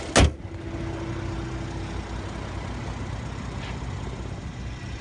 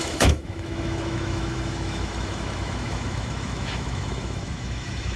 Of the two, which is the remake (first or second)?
second